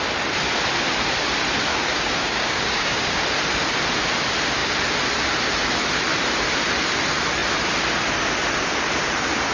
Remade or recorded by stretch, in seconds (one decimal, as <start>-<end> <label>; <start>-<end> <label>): 0.0-1.7 recorded; 1.7-3.2 remade; 3.2-9.5 recorded